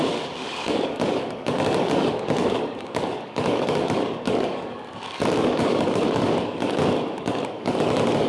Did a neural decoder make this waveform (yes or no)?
yes